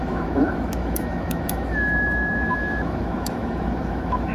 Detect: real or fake fake